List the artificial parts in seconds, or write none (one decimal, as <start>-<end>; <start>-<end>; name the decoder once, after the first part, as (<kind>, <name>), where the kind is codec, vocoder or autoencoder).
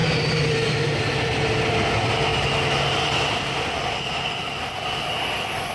0.0-1.7 (vocoder, BigVGAN v2)